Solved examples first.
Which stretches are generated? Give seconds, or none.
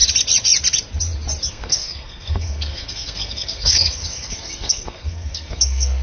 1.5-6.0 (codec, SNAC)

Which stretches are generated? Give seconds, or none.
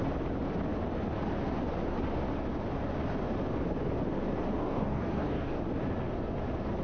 4.6-5.6 (codec, DAC)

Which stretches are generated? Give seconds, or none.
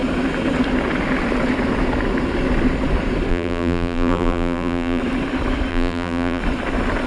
3.3-5.0 (vocoder, BigVGAN v2); 5.7-6.4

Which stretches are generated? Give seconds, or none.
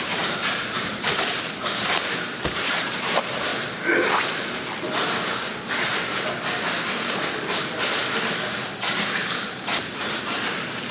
0.0-3.5 (vocoder, BigVGAN v2); 7.6-10.9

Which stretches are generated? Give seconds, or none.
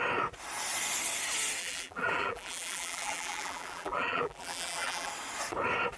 1.6-5.1 (vocoder, BigVGAN v2)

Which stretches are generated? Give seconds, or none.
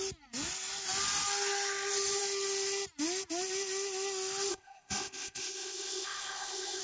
4.5-6.8 (codec, ZipCodec)